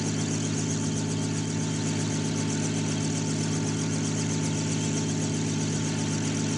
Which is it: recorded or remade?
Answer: recorded